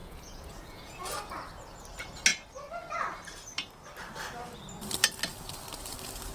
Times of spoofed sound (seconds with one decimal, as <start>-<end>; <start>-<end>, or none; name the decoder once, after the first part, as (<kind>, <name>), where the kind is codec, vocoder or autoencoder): 0.0-1.2 (vocoder, Vocos)